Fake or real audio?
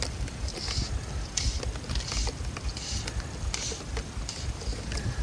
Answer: real